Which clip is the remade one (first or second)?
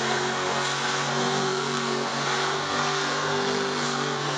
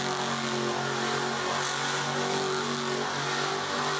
first